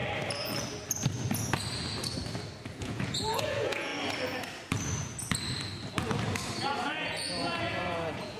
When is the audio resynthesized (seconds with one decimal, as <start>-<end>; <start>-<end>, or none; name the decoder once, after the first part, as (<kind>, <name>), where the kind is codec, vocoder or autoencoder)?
2.8-3.9 (vocoder, Vocos); 6.8-8.4

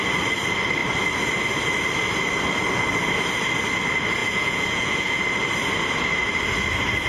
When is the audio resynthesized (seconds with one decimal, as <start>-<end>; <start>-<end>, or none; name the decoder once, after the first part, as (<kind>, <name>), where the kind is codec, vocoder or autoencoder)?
4.2-5.2 (vocoder, Vocos)